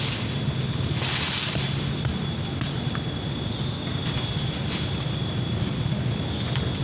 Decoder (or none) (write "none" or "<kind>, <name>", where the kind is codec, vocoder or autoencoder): none